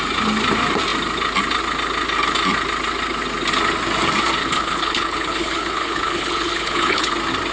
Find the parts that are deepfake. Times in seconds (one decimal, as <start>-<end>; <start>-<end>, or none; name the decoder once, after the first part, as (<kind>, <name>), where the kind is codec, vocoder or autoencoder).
4.4-7.1 (codec, HILCodec)